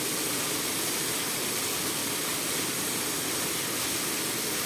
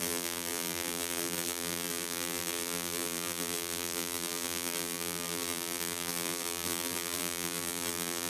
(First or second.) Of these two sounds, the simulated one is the second